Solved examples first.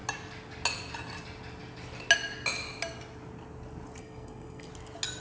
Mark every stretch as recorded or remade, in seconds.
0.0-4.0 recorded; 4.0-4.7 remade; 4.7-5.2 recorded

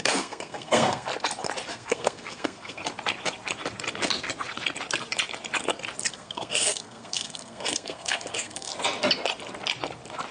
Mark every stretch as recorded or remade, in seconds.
0.0-1.1 remade; 1.1-1.7 recorded; 1.7-2.8 remade; 2.8-6.1 recorded; 6.1-8.7 remade; 8.7-10.3 recorded

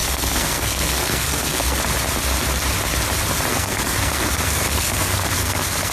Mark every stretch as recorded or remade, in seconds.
0.0-1.8 remade; 1.8-3.5 recorded; 3.5-5.9 remade